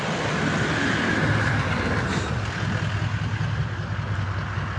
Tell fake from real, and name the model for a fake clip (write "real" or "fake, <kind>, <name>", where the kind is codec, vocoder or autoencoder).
real